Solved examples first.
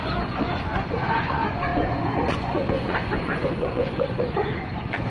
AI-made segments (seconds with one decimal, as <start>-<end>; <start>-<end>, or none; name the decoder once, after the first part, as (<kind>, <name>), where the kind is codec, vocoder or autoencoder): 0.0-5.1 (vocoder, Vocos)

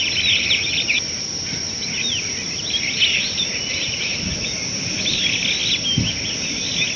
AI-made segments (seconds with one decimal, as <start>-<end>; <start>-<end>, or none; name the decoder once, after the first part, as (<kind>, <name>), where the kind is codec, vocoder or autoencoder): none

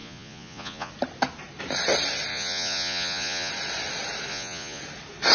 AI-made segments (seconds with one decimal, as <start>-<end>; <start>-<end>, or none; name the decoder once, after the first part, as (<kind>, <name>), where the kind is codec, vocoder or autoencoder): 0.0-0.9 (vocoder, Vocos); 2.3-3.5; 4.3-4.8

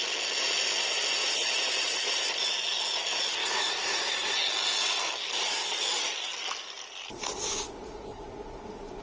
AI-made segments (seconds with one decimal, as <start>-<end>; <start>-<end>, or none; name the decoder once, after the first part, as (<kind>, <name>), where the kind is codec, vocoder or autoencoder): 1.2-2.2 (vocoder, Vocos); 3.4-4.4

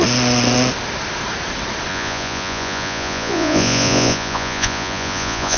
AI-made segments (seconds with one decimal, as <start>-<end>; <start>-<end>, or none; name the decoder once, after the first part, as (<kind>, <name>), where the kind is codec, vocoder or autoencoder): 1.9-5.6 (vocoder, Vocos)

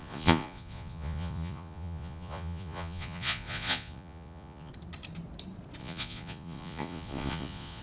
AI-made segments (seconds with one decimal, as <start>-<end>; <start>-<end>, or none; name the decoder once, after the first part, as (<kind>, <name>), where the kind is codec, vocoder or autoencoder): 0.0-4.7 (vocoder, Vocos); 5.8-7.8

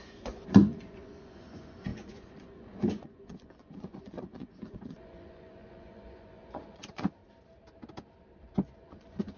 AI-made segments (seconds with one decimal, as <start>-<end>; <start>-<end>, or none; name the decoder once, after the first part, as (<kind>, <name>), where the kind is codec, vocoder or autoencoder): 0.0-7.2 (vocoder, Vocos); 8.8-9.4

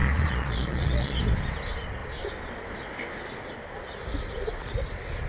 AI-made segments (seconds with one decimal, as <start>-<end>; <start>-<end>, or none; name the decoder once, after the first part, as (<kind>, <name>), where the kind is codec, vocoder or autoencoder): 0.0-1.2 (vocoder, Vocos)